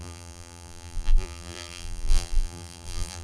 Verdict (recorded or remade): remade